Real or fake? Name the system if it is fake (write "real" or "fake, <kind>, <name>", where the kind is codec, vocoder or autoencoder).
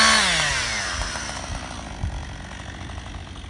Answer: real